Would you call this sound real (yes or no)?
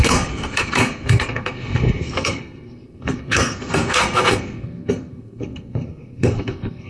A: no